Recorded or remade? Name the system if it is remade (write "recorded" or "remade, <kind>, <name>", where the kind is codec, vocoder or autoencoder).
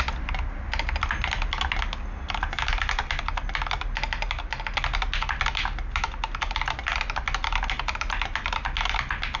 recorded